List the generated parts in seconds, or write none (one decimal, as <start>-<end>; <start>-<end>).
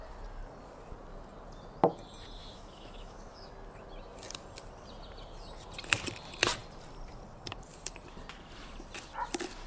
2.4-3.5